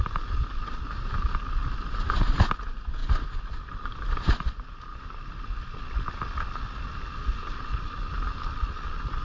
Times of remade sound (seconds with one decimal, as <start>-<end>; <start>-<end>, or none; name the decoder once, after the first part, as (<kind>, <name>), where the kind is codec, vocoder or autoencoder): 1.6-2.2 (vocoder, BigVGAN v2); 7.4-9.2